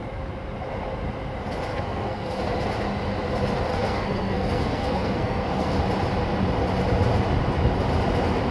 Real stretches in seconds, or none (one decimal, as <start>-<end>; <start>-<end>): 0.0-1.7; 2.4-3.7; 5.8-8.5